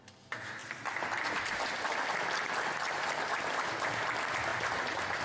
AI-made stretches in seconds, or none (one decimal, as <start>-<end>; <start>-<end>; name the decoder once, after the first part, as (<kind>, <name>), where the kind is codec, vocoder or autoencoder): 0.6-3.7 (vocoder, BigVGAN v2)